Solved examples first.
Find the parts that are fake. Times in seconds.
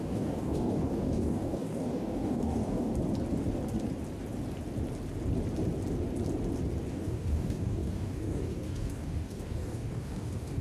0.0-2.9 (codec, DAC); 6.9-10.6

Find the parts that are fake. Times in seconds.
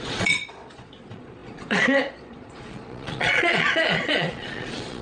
0.0-5.0 (vocoder, Vocos)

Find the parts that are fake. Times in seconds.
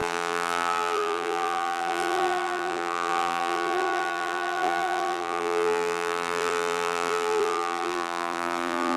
0.0-9.0 (vocoder, BigVGAN v2)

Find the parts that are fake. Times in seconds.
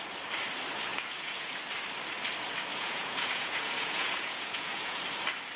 0.9-1.5 (vocoder, Vocos); 2.7-5.0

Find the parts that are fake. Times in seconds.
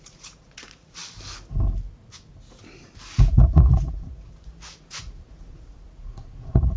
0.0-1.0 (vocoder, Vocos); 3.3-6.8